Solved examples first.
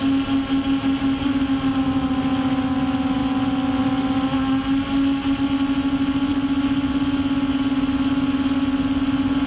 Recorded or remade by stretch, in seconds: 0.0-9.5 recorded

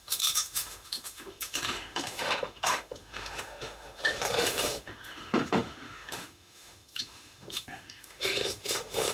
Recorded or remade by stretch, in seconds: 0.0-9.1 remade

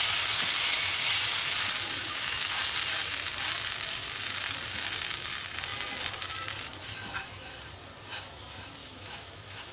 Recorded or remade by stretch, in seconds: 0.0-2.0 recorded; 2.0-2.6 remade; 2.6-8.8 recorded; 8.8-9.7 remade

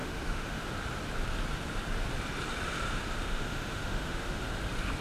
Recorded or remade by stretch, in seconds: 0.0-0.6 remade; 0.6-3.2 recorded; 3.2-4.5 remade; 4.5-5.0 recorded

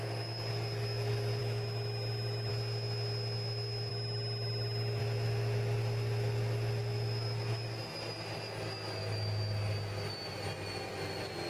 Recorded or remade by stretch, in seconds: 0.0-1.4 recorded; 1.4-2.5 remade; 2.5-3.9 recorded; 3.9-5.0 remade; 5.0-11.5 recorded

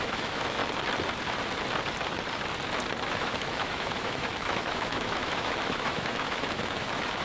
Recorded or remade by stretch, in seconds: 0.0-0.6 remade; 0.6-3.1 recorded; 3.1-7.2 remade